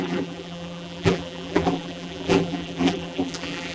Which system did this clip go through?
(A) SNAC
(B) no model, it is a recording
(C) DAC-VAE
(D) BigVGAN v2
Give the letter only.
D